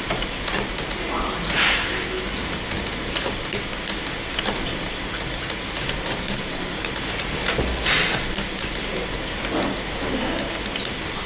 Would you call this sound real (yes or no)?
yes